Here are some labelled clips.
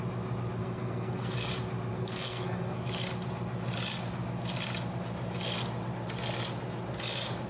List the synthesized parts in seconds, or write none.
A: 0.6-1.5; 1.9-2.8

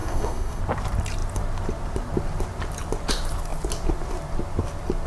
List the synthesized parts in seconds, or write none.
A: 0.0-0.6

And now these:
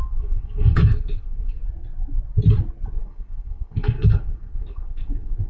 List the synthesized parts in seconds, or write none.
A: 0.0-1.6; 3.0-5.5

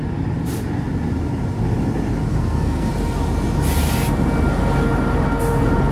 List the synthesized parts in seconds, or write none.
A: 2.3-2.9